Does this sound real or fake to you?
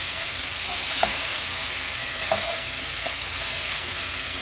fake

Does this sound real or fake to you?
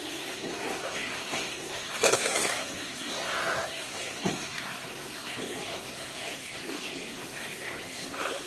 fake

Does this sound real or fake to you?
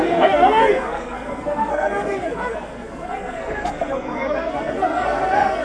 fake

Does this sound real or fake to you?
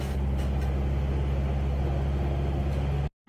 real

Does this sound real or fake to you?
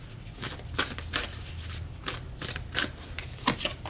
real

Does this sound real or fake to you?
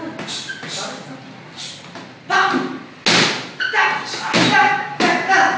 real